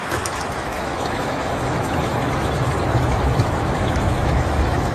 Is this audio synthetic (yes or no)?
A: yes